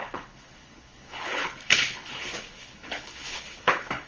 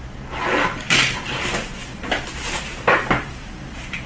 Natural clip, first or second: second